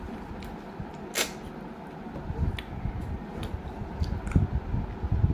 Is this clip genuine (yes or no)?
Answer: yes